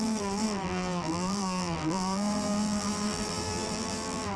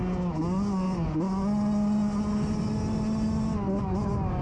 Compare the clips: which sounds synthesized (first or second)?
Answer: first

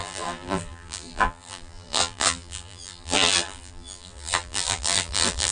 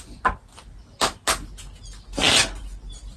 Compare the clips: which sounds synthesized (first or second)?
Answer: first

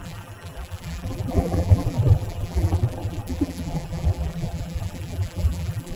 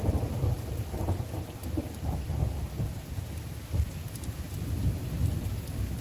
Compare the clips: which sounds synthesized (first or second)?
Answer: first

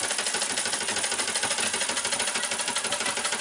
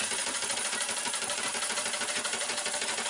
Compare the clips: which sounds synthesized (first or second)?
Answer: second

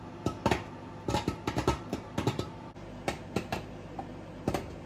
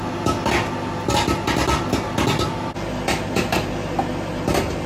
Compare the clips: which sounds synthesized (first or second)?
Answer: first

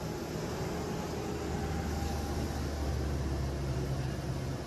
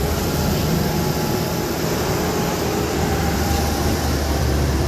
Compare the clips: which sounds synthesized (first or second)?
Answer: second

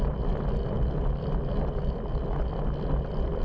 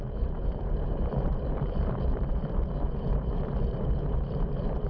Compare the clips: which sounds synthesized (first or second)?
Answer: second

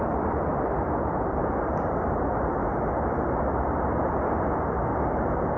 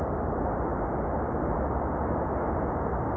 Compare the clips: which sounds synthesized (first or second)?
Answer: first